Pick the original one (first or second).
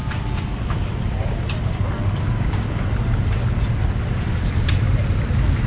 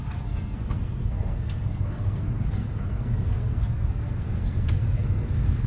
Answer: first